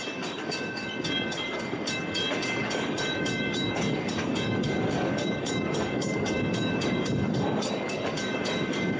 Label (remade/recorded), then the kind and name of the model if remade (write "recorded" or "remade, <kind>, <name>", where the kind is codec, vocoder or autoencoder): remade, codec, DAC